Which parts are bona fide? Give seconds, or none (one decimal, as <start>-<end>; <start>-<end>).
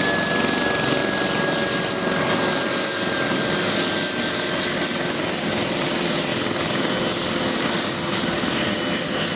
0.0-9.4